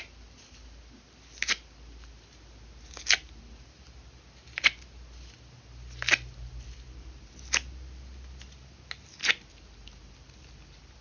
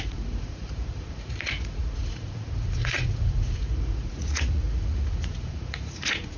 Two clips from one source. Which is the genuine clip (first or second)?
first